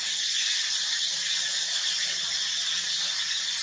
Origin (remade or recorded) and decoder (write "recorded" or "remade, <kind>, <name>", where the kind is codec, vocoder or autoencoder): recorded